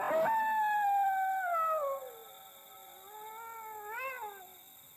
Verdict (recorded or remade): recorded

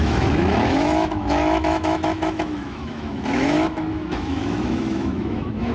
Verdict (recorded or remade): remade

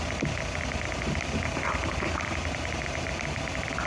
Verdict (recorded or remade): recorded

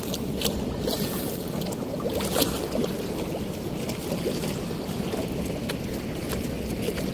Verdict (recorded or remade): recorded